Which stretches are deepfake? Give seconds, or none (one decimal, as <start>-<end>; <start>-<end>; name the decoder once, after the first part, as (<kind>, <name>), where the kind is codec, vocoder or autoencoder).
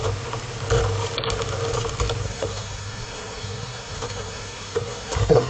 2.2-5.5 (codec, SNAC)